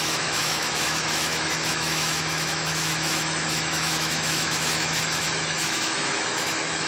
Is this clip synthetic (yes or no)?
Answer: yes